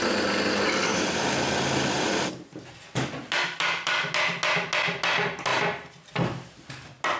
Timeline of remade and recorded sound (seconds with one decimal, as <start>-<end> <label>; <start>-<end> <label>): 0.0-7.2 recorded